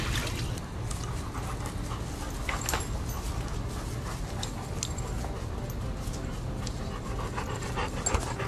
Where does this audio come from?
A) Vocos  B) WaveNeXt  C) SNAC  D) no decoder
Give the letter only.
D